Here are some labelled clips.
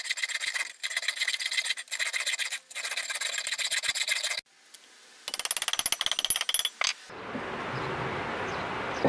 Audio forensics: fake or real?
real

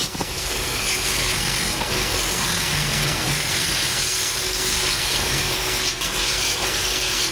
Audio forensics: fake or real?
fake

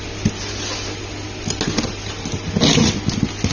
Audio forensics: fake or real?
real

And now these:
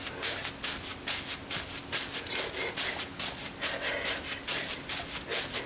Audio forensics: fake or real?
real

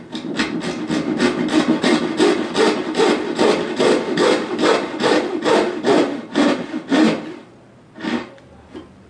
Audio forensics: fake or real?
real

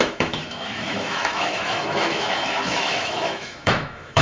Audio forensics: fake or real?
fake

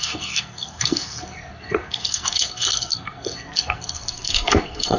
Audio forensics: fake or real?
fake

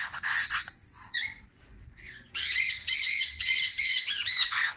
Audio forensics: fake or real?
fake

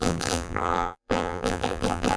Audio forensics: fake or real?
fake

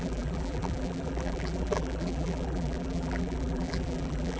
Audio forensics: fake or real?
fake